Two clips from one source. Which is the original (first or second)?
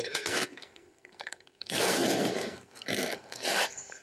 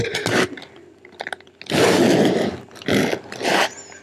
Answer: second